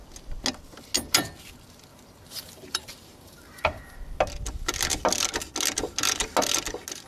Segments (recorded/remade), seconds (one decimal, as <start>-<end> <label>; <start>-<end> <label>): 0.0-1.9 recorded; 1.9-4.2 remade; 4.2-7.1 recorded